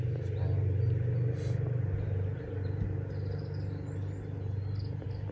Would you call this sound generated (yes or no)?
no